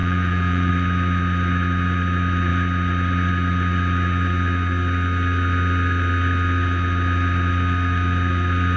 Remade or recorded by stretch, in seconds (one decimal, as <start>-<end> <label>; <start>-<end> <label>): 0.0-0.7 remade; 0.7-8.8 recorded